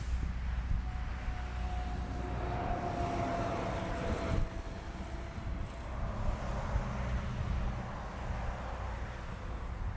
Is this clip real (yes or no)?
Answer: yes